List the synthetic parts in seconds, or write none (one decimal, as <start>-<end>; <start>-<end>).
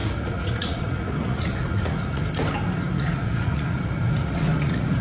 0.0-2.2; 2.9-5.0